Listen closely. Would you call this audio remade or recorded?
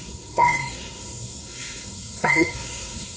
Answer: remade